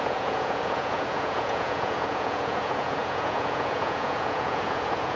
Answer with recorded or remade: remade